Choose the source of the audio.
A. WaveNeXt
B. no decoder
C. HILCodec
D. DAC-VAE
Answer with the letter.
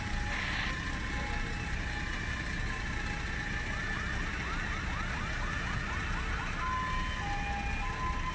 B